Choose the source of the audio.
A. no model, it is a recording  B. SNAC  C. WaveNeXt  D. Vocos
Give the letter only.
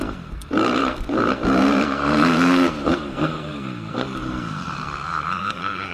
B